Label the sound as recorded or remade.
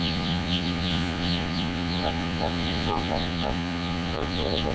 remade